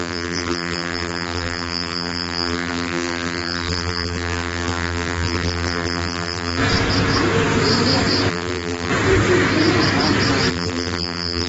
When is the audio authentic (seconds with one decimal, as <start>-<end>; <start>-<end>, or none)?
6.6-8.3; 8.9-10.5

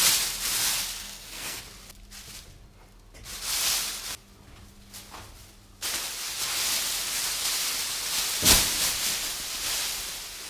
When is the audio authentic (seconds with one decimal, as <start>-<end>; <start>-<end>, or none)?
0.0-1.0; 1.6-10.5

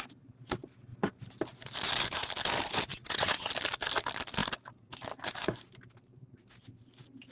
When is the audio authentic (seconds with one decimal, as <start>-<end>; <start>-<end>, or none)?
0.0-2.9; 3.5-7.3

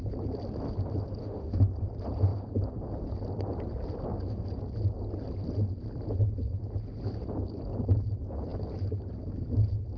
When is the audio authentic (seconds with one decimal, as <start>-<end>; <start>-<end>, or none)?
0.0-1.2; 1.7-10.0

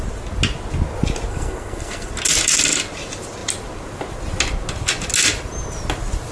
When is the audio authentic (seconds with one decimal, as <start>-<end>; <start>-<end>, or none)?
0.0-1.3; 2.1-6.3

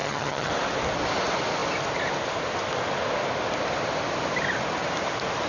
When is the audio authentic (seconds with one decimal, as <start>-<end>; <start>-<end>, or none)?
0.5-5.5